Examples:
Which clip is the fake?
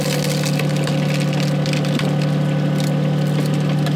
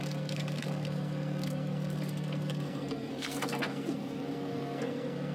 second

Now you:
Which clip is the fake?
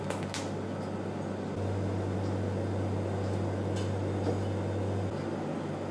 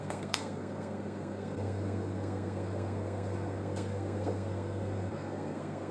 second